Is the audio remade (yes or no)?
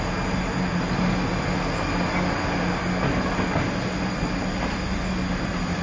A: no